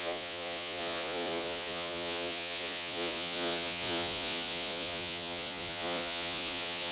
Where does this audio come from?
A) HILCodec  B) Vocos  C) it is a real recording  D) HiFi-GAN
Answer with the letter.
B